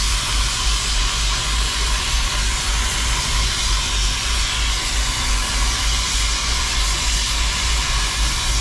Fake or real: fake